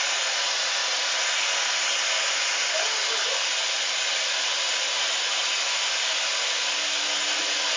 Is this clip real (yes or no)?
yes